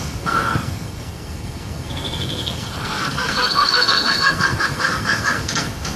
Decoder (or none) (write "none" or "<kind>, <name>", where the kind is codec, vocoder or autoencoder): codec, SNAC